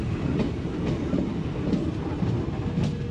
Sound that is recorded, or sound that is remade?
recorded